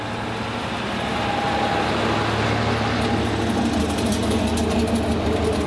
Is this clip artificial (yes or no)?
no